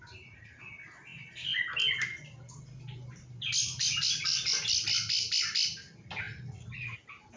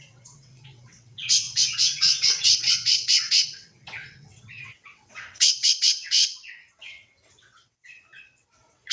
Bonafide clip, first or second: first